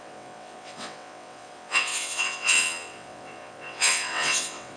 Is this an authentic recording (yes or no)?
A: no